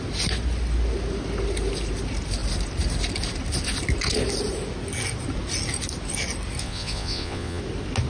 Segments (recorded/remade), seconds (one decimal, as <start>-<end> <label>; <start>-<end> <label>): 0.0-6.6 recorded; 6.6-7.6 remade; 7.6-8.1 recorded